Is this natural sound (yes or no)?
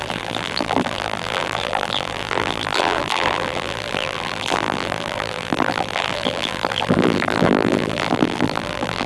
no